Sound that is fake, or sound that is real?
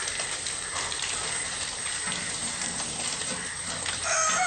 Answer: real